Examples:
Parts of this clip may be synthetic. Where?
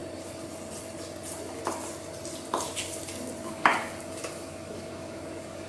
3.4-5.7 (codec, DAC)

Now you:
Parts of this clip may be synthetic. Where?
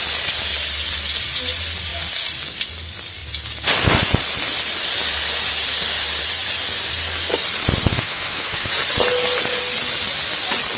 7.9-8.7 (autoencoder, DAC-VAE)